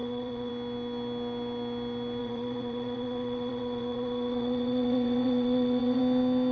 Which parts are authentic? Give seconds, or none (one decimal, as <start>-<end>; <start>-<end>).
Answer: 0.5-2.2; 6.0-6.5